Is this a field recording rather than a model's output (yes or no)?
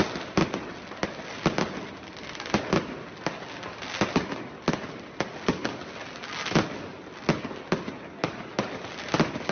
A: yes